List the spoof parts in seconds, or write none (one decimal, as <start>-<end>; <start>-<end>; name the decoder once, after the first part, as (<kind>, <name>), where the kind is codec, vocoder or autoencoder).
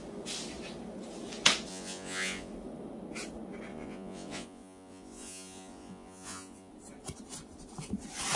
1.7-2.5 (vocoder, Vocos); 3.7-6.7